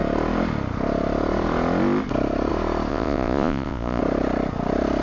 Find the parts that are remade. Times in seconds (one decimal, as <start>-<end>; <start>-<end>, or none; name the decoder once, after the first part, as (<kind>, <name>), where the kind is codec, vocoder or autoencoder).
2.9-4.0 (vocoder, Vocos)